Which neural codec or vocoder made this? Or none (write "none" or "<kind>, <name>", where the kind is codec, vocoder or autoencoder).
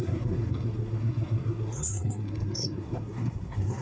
codec, SNAC